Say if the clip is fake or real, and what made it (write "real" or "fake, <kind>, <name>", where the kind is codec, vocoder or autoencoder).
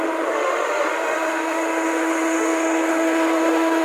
fake, autoencoder, DAC-VAE